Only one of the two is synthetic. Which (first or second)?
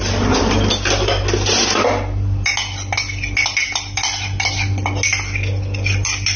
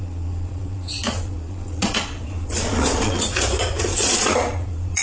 second